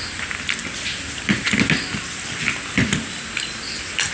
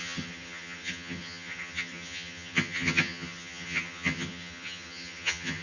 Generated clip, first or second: second